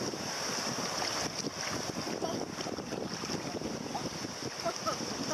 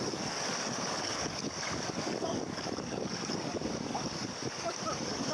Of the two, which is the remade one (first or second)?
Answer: second